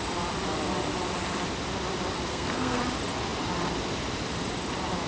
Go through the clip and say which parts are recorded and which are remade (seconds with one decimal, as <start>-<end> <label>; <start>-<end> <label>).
0.0-2.3 recorded; 2.3-2.8 remade; 2.8-5.1 recorded